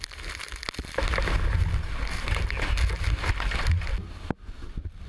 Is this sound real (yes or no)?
yes